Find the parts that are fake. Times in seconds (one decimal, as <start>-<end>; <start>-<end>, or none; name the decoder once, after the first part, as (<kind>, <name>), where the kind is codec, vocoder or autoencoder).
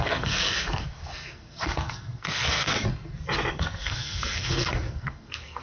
0.0-2.7 (codec, SNAC); 3.5-5.6